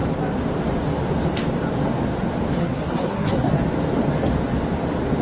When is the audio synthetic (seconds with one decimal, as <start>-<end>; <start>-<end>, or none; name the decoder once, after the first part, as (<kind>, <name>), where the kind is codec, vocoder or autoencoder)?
2.6-3.5 (codec, SNAC)

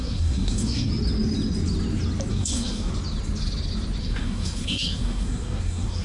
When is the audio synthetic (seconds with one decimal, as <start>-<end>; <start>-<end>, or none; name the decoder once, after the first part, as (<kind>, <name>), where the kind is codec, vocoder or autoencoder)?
0.0-0.9 (codec, SNAC); 2.3-2.9; 4.0-6.0

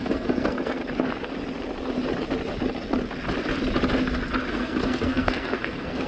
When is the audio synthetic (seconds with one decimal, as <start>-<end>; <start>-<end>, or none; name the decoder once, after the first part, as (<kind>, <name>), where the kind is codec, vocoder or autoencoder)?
0.0-0.8 (codec, SNAC); 4.5-6.1

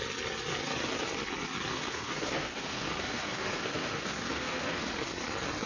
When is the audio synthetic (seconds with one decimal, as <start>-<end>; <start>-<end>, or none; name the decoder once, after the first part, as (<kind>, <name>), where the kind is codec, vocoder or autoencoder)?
1.7-4.9 (codec, SNAC)

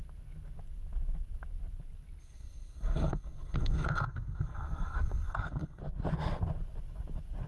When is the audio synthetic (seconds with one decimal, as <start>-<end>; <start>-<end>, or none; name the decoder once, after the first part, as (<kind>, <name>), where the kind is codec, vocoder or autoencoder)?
2.2-5.8 (codec, SNAC)

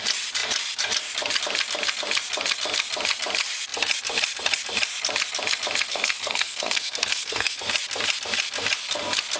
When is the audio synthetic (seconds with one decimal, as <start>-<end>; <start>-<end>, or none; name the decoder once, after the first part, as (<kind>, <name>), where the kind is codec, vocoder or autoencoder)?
5.9-7.6 (codec, SNAC)

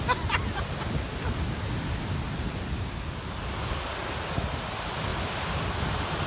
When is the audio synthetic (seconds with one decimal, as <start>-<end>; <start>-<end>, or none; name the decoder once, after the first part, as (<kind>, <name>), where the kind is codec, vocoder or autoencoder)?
none